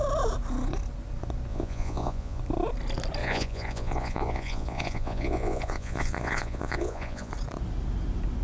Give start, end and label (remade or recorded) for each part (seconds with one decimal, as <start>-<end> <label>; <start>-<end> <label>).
0.0-1.5 recorded; 1.5-2.4 remade; 2.4-3.2 recorded; 3.2-7.3 remade; 7.3-8.4 recorded